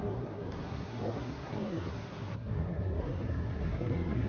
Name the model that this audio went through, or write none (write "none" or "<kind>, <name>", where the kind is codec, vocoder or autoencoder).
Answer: codec, SNAC